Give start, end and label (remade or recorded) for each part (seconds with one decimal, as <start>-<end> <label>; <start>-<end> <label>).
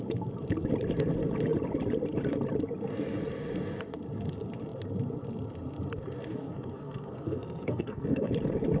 0.0-6.3 recorded; 6.3-8.3 remade; 8.3-8.8 recorded